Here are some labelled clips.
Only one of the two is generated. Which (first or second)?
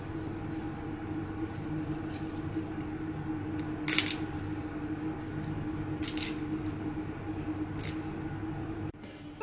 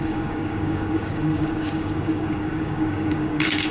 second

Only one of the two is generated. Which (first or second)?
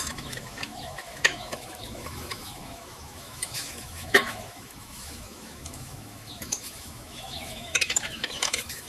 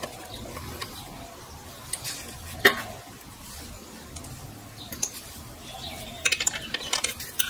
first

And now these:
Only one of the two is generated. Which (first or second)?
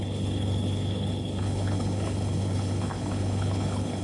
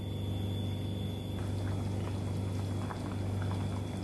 first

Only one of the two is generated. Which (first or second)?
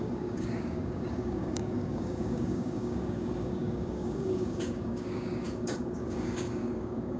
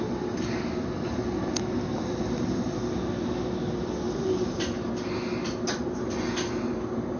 first